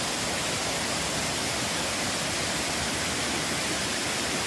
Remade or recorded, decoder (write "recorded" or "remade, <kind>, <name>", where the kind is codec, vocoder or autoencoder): recorded